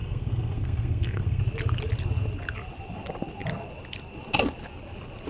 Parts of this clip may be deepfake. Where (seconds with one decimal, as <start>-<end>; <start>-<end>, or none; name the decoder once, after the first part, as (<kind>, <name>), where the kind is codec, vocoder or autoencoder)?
0.0-1.4 (codec, SNAC)